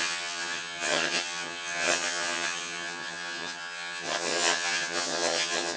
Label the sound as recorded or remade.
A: remade